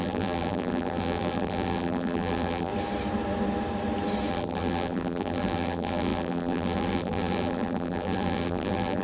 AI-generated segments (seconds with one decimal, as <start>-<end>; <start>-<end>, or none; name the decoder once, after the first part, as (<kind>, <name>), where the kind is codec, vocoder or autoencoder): 0.0-2.7 (vocoder, BigVGAN v2); 4.3-9.0